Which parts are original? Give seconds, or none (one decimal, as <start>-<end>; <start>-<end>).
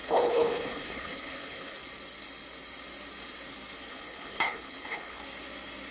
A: 1.8-3.9; 5.2-5.9